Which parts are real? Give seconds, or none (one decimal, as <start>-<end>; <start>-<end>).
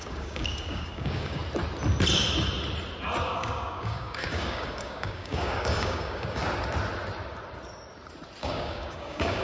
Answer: 1.4-3.2; 6.4-8.4